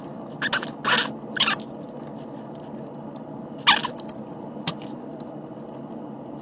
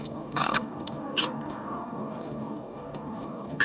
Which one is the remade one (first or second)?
second